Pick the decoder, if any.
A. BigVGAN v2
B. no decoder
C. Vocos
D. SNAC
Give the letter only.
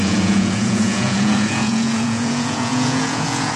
C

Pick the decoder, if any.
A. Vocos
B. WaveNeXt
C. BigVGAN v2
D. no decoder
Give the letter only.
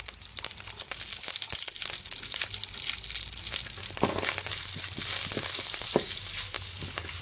D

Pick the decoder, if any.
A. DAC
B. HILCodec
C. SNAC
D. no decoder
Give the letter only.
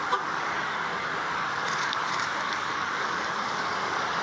A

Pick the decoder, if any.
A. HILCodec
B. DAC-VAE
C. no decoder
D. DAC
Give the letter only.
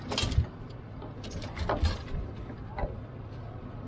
C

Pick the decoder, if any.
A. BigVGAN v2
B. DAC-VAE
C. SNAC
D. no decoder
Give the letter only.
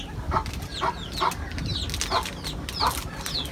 D